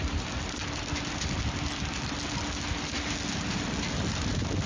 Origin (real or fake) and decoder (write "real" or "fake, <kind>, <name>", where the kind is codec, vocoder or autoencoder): real